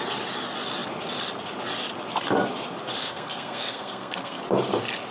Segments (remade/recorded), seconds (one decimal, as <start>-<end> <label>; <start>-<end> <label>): 0.0-3.0 recorded; 3.0-4.4 remade; 4.4-5.1 recorded

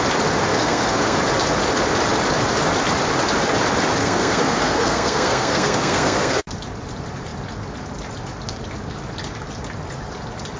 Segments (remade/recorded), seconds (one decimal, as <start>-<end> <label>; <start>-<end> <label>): 0.0-0.5 recorded; 0.5-1.2 remade; 1.2-4.0 recorded; 4.0-6.4 remade; 6.4-10.6 recorded

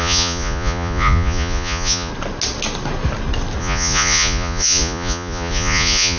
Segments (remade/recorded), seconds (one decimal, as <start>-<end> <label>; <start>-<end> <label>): 0.0-2.1 remade; 2.1-3.6 recorded; 3.6-6.2 remade

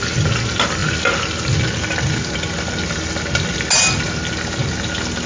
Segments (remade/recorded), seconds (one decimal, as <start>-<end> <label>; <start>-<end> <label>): 0.0-5.3 recorded

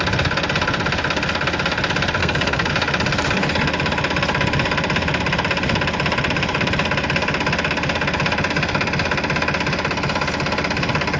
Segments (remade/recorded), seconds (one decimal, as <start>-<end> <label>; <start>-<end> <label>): 0.0-2.2 recorded; 2.2-2.7 remade; 2.7-11.2 recorded

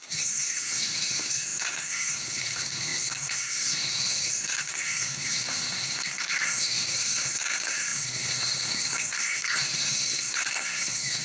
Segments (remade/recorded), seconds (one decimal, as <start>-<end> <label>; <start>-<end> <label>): 0.0-11.2 remade

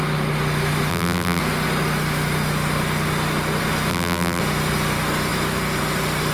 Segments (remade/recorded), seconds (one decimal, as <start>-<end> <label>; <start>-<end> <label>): 0.0-0.9 recorded; 0.9-1.4 remade; 1.4-3.9 recorded; 3.9-4.4 remade; 4.4-6.3 recorded

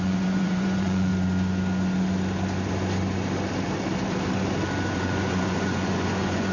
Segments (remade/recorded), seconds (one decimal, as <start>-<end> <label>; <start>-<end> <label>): 0.0-1.1 remade; 1.1-5.0 recorded; 5.0-6.5 remade